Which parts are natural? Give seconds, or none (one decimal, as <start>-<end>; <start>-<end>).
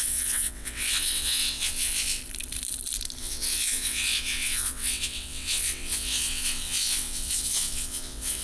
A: 2.2-3.2